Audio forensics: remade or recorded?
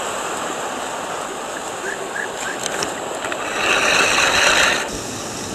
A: recorded